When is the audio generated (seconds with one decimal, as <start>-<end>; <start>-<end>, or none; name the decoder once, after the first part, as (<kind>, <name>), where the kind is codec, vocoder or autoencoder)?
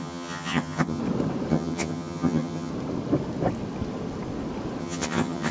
0.0-1.0 (vocoder, HiFi-GAN); 1.5-2.7; 4.8-5.5